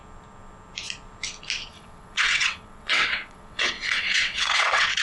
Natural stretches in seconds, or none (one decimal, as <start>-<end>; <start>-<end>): 0.0-1.7